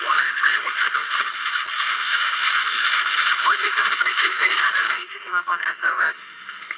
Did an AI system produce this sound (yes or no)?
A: yes